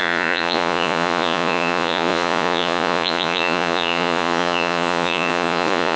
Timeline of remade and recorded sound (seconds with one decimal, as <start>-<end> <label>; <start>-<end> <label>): 0.0-6.0 remade